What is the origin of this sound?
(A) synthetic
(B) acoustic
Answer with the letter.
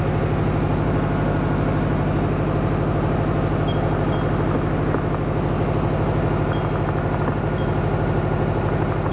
B